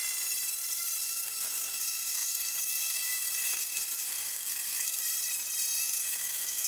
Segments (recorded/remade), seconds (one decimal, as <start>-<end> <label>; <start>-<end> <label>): 0.0-1.0 recorded; 1.0-5.0 remade; 5.0-5.8 recorded; 5.8-6.7 remade